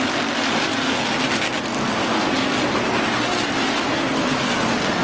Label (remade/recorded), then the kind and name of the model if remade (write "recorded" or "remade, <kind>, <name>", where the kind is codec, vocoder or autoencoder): recorded